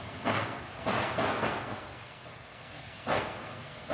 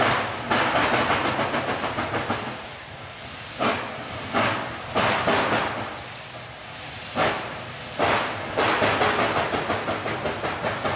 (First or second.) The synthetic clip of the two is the first